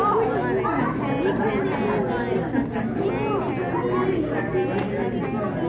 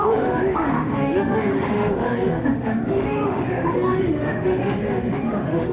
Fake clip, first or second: second